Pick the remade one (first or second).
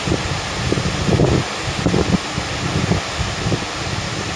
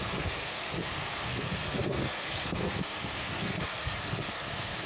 second